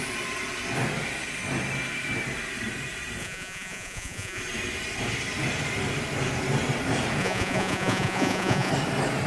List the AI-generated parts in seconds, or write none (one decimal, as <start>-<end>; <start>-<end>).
3.2-4.4; 7.2-8.7

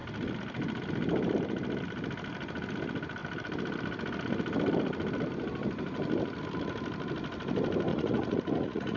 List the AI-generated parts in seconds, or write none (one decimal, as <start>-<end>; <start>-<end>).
7.9-9.0

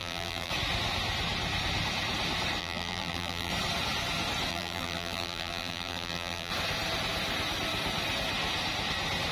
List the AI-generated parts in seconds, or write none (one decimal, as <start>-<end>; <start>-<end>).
0.0-0.5; 2.6-3.5; 4.5-6.5

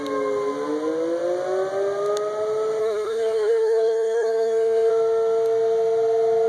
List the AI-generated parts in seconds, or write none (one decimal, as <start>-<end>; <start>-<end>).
2.8-4.9

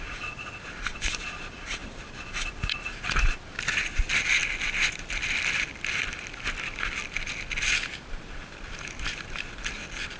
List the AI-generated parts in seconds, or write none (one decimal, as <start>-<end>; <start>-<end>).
none

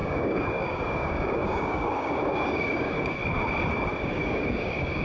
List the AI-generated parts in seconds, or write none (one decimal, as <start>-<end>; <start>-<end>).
0.0-3.2; 4.0-5.0